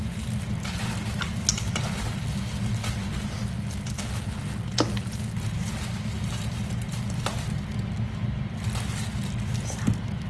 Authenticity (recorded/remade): recorded